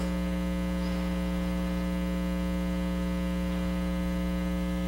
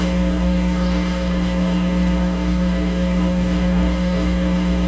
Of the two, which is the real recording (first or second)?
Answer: first